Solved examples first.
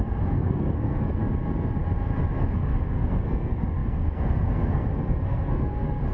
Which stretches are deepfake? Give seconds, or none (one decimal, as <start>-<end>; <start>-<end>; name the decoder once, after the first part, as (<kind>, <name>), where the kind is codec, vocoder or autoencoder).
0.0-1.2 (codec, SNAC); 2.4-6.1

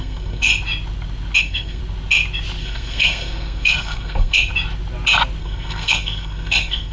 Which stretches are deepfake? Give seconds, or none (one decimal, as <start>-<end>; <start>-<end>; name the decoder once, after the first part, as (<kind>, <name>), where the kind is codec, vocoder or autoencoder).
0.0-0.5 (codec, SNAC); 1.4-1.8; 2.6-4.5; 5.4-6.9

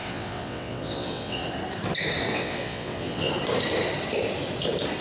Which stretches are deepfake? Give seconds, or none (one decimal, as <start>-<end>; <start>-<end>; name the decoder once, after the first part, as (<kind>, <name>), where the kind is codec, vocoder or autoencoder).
0.0-1.4 (vocoder, WaveNeXt); 2.3-3.3